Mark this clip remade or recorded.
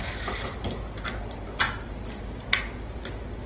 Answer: recorded